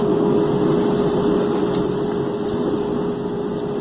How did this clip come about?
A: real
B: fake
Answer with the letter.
A